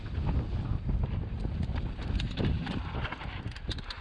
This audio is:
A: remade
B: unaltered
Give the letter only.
B